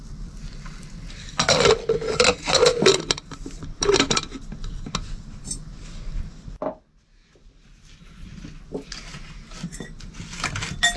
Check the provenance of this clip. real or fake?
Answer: real